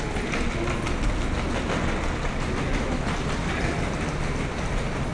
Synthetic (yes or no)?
no